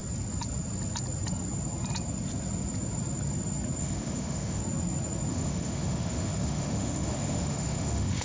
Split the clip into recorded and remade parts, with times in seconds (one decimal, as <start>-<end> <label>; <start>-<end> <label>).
0.0-3.8 recorded; 3.8-4.6 remade; 4.6-5.3 recorded; 5.3-8.2 remade